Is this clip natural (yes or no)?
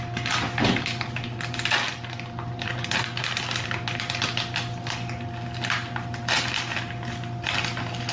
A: yes